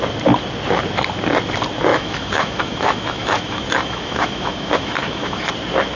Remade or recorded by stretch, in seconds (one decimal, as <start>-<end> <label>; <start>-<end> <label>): 0.0-1.9 recorded; 1.9-5.5 remade; 5.5-6.0 recorded